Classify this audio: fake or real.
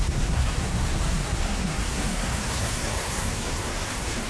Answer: fake